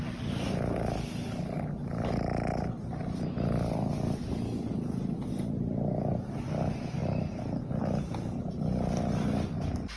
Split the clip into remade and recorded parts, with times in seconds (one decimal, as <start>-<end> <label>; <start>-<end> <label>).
0.0-10.0 recorded